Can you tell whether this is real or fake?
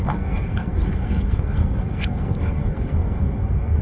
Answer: fake